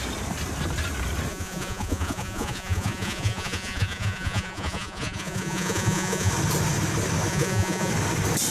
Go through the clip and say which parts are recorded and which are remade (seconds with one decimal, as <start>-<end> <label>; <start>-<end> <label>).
0.0-1.3 recorded; 1.3-6.3 remade; 6.3-7.3 recorded; 7.3-7.9 remade; 7.9-8.5 recorded